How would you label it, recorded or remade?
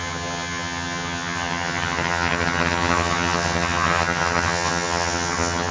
remade